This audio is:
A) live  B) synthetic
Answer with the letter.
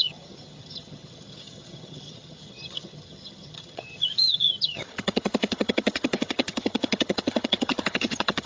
B